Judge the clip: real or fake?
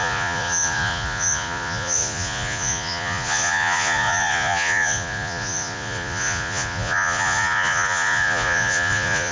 fake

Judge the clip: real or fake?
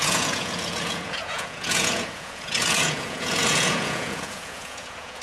fake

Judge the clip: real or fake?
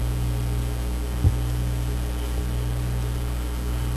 real